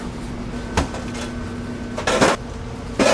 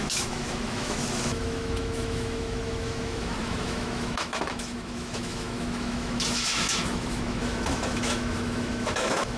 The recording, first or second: first